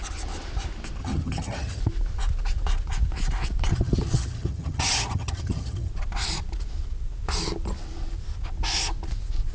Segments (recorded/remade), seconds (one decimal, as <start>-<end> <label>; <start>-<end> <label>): 0.0-1.0 recorded; 1.0-1.8 remade; 1.8-3.7 recorded; 3.7-5.9 remade; 5.9-9.5 recorded